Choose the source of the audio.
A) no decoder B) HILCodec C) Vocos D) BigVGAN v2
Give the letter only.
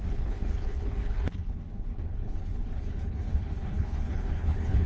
B